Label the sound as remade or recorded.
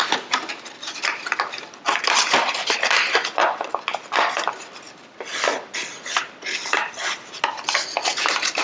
recorded